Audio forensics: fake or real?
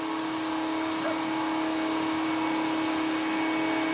real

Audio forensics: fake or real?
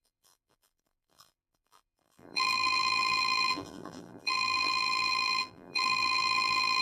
fake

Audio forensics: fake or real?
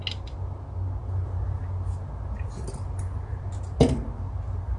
real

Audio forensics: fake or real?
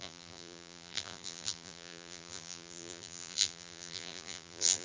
fake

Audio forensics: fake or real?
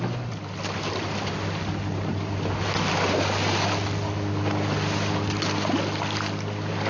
real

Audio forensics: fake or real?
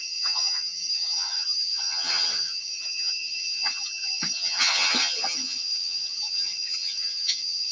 fake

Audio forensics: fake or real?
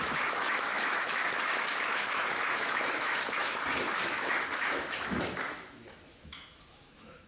fake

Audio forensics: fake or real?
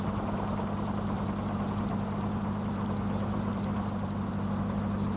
real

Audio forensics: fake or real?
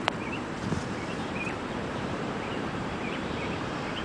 fake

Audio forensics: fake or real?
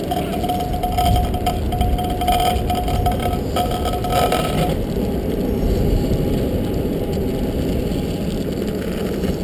real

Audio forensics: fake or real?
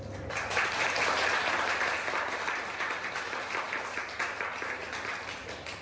real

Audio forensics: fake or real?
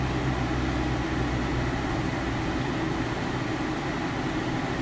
real